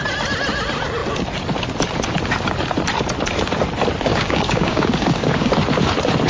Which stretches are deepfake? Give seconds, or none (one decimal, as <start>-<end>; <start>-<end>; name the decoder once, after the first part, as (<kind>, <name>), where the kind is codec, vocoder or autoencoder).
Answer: 4.1-5.5 (codec, DAC)